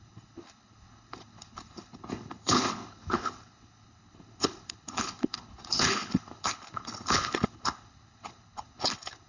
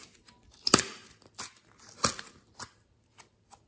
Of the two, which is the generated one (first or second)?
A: first